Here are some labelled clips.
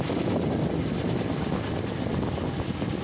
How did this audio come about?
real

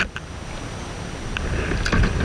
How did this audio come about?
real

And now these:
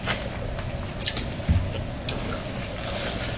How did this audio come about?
real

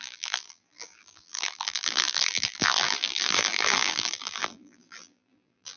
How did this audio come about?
fake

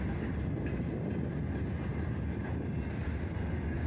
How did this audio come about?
real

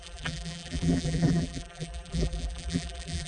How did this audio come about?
fake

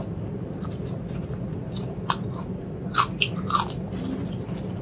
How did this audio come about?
real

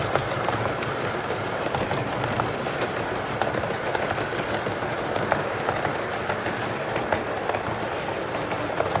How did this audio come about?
fake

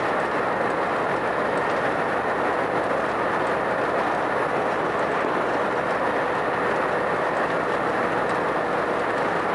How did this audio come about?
real